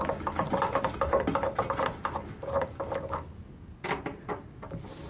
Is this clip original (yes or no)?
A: yes